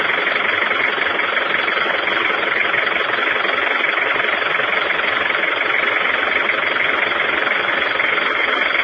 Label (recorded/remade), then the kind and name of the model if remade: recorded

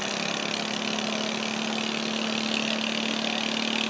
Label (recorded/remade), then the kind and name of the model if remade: recorded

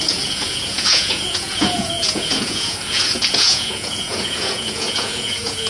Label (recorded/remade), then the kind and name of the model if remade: remade, vocoder, Vocos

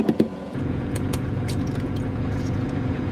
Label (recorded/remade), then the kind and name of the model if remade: remade, vocoder, Vocos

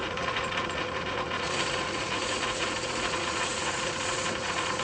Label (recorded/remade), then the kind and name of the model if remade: remade, vocoder, Vocos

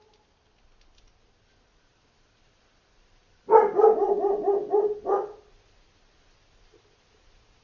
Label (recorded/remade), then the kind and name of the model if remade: recorded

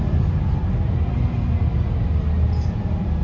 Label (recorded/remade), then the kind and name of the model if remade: recorded